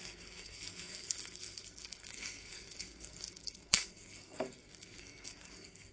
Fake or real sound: fake